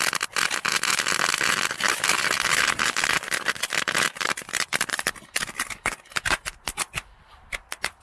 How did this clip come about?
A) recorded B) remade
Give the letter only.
A